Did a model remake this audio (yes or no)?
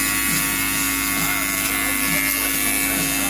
no